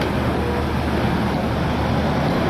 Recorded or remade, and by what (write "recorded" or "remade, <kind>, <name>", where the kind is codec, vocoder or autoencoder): recorded